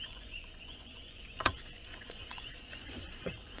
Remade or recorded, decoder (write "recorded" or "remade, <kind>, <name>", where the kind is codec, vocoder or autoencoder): remade, vocoder, Vocos